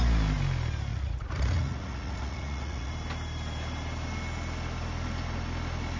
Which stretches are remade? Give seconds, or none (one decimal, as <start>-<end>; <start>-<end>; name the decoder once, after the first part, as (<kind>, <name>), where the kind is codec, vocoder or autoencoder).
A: 0.9-2.9 (vocoder, Vocos)